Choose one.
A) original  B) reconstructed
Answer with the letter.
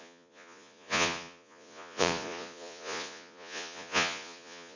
B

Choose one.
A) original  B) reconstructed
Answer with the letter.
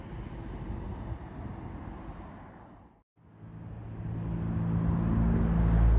A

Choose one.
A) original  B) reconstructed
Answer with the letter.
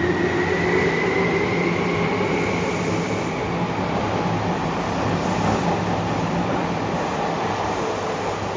A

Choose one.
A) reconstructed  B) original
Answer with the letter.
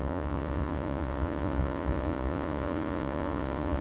A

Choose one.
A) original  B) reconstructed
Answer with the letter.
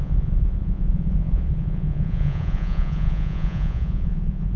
B